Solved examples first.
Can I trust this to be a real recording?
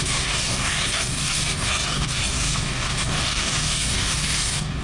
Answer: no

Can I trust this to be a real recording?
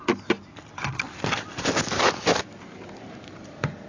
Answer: yes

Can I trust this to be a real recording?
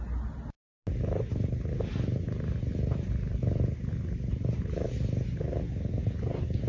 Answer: yes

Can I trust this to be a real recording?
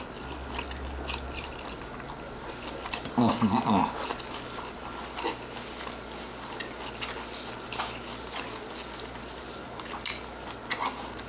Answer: yes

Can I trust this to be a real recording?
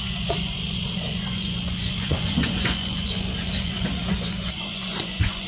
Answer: no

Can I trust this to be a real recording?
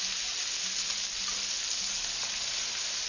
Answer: yes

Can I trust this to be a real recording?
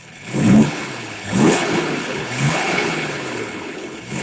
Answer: no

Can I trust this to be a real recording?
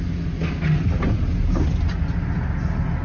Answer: yes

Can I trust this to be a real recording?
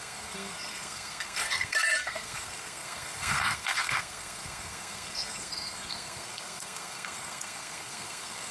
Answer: no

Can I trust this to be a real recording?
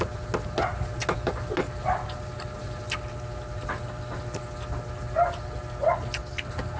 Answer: yes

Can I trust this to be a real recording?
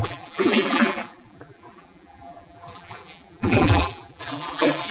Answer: no